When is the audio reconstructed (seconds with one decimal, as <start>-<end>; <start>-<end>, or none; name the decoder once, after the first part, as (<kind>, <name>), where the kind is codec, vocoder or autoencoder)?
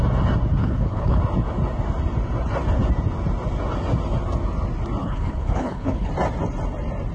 0.6-1.2 (codec, HILCodec); 5.0-6.1